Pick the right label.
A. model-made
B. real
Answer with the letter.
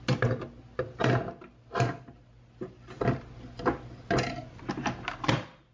B